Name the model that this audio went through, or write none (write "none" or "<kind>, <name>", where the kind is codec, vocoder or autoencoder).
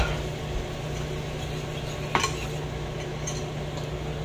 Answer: none